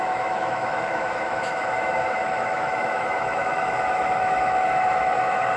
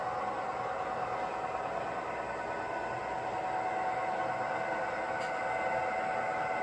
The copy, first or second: first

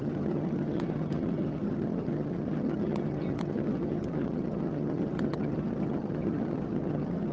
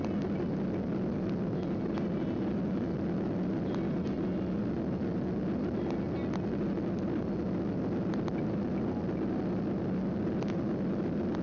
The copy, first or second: first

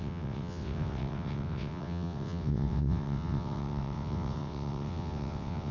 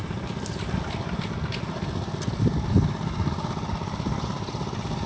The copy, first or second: first